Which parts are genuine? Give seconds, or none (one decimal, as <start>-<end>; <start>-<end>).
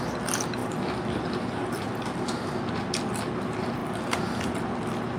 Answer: 0.0-0.6; 2.3-3.8; 4.6-5.2